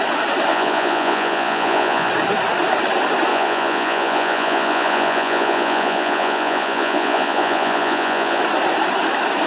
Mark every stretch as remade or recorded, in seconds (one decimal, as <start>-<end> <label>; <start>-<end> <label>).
0.0-0.5 recorded; 0.5-2.1 remade; 2.1-3.3 recorded; 3.3-8.4 remade; 8.4-9.5 recorded